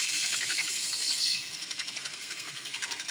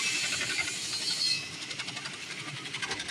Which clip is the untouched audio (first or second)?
second